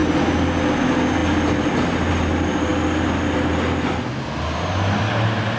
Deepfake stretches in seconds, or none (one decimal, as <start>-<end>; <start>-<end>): none